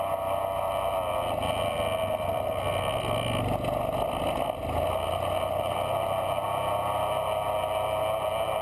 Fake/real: real